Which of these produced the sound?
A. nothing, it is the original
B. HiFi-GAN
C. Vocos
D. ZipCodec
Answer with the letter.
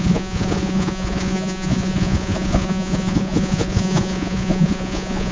C